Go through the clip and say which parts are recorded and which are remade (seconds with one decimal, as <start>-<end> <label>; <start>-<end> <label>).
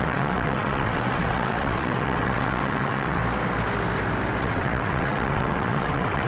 0.0-3.2 remade; 3.2-4.4 recorded; 4.4-6.3 remade